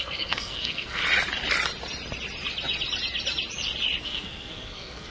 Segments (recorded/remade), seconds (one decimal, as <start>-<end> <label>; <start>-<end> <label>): 0.0-1.0 remade; 1.0-4.0 recorded; 4.0-5.1 remade